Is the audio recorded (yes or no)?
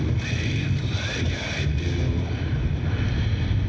yes